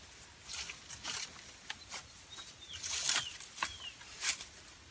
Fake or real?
real